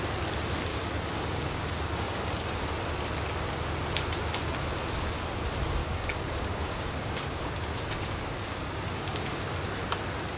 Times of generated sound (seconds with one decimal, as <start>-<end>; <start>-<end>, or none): 0.7-2.2; 5.8-9.4